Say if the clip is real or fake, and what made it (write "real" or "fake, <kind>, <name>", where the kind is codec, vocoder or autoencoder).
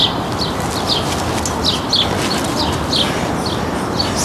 real